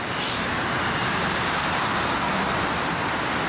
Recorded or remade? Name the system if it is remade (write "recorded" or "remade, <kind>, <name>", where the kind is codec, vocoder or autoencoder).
recorded